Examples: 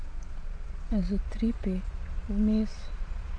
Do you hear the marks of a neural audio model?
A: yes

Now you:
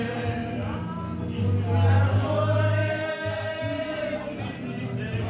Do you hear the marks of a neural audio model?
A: no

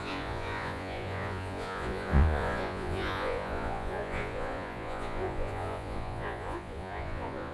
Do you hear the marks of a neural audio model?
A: yes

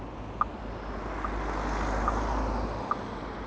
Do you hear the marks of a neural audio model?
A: no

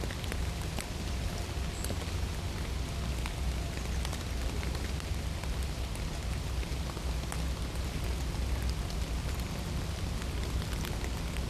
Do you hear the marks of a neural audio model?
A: no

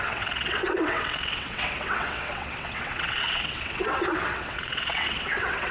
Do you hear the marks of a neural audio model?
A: yes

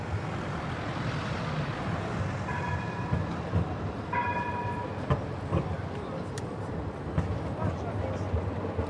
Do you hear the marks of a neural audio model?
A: no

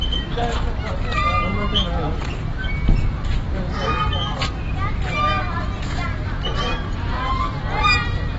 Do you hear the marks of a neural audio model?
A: no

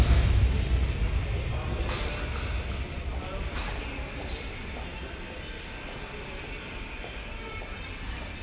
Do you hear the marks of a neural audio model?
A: no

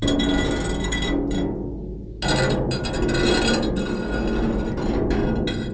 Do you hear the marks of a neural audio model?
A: no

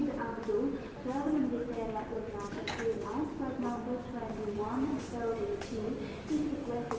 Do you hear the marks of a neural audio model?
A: no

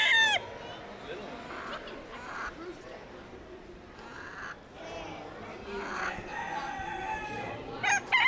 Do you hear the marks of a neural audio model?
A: no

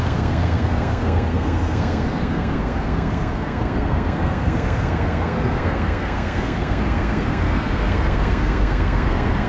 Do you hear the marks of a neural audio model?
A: yes